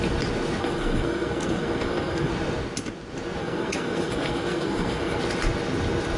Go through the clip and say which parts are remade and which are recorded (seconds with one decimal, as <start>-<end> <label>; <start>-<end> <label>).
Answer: 0.0-0.6 recorded; 0.6-2.3 remade; 2.3-3.4 recorded; 3.4-5.2 remade; 5.2-6.2 recorded